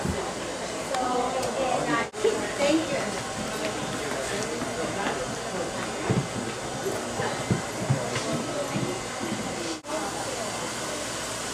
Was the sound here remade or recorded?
recorded